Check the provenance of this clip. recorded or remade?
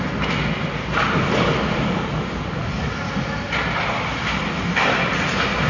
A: recorded